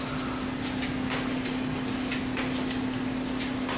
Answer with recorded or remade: recorded